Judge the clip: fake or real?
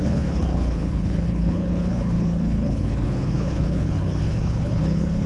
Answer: fake